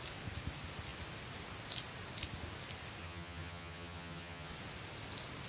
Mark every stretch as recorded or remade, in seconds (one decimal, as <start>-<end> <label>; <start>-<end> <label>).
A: 0.0-3.0 recorded; 3.0-4.5 remade; 4.5-5.5 recorded